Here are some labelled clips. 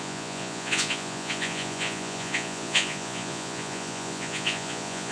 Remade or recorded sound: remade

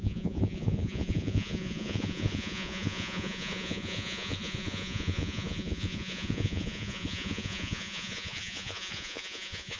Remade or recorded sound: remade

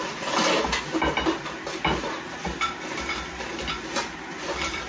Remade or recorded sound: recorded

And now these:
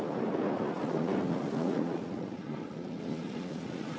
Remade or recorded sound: remade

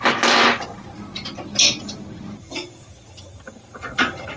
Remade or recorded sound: recorded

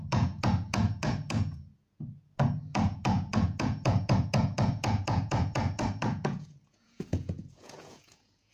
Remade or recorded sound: remade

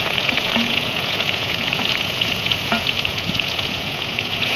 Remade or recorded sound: remade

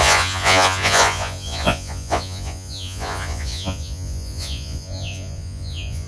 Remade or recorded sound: remade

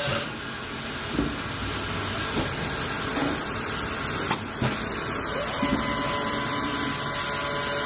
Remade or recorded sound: recorded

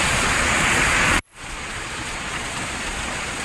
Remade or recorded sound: remade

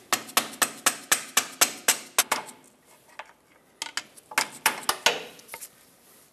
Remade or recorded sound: recorded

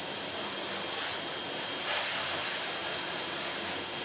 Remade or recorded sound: recorded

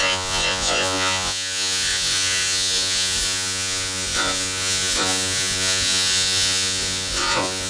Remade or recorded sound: remade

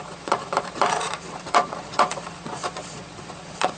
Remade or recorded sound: remade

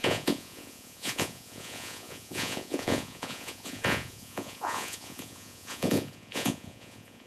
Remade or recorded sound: remade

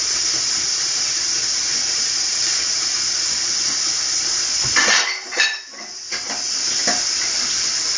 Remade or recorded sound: recorded